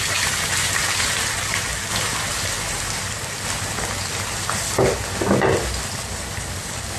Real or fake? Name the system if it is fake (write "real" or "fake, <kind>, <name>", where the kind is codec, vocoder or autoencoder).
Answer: real